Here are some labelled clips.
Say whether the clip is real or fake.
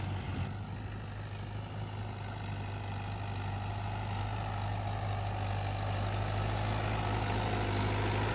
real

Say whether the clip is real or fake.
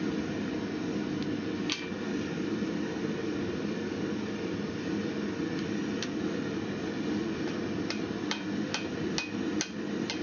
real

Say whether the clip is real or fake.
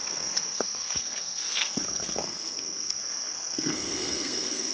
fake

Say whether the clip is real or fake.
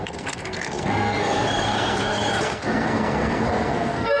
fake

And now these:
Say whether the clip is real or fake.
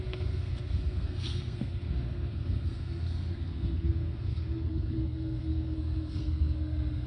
fake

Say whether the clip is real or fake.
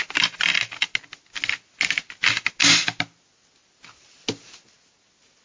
real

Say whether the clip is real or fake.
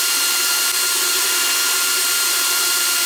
real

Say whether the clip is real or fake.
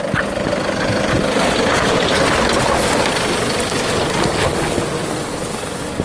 real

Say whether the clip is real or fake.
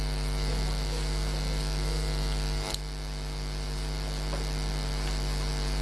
real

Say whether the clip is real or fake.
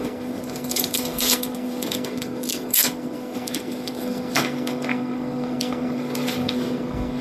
fake